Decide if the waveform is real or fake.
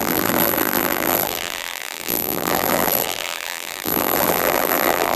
fake